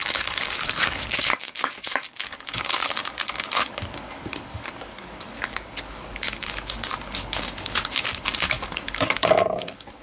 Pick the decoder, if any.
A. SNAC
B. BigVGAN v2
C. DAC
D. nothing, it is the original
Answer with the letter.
C